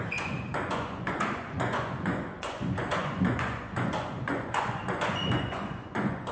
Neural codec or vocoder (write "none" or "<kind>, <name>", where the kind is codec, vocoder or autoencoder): vocoder, Vocos